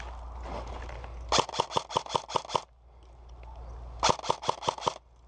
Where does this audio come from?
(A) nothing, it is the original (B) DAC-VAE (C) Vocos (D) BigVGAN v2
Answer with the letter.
A